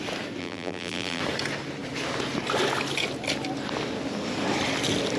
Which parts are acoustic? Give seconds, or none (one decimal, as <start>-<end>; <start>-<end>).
0.0-0.4; 1.2-5.2